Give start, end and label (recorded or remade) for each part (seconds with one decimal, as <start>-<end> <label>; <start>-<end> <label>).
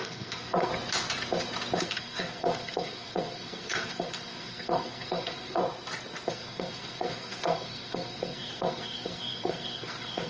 0.0-0.7 remade; 0.7-1.8 recorded; 1.8-5.6 remade; 5.6-6.3 recorded; 6.3-10.3 remade